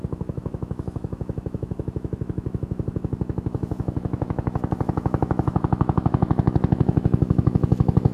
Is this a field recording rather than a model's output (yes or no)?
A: no